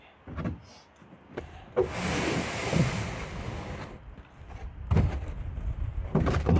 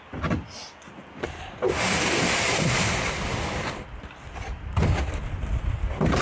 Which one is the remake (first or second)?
second